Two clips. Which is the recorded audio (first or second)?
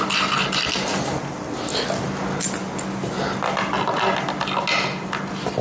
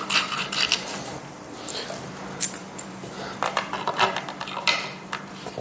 first